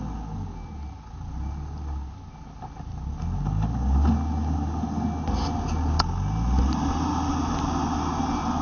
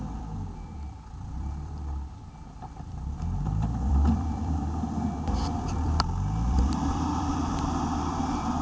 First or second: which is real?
first